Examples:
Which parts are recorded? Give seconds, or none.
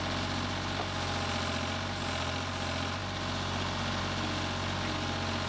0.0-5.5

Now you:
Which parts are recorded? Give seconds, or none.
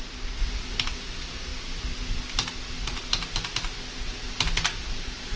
0.0-5.4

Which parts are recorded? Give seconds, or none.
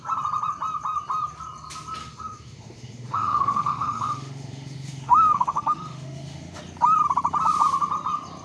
0.0-2.0; 6.6-8.4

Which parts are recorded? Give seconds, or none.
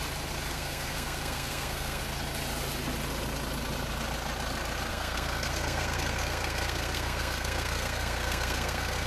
0.0-0.5; 2.0-4.9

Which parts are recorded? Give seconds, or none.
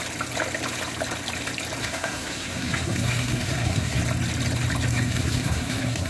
0.0-1.8; 4.0-4.9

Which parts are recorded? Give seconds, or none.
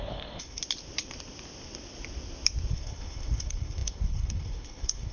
0.6-2.7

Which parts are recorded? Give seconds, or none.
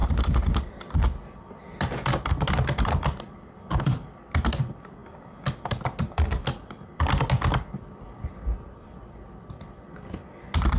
0.0-10.8